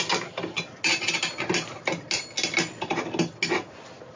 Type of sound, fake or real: real